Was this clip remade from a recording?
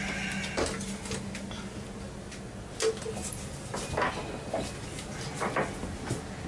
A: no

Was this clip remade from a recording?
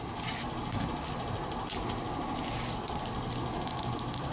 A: no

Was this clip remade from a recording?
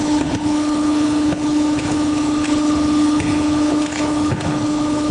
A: yes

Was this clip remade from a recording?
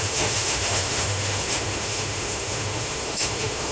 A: yes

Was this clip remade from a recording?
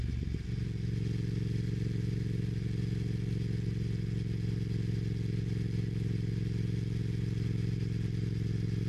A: no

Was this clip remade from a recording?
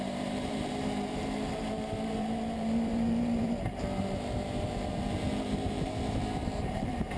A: yes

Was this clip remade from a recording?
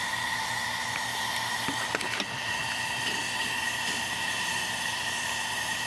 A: no